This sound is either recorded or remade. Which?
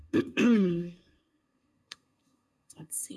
remade